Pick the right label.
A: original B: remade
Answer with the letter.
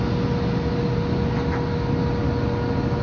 A